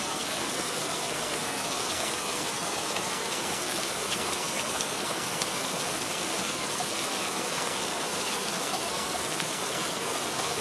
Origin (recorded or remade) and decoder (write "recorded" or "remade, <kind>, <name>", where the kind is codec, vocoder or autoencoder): remade, codec, SNAC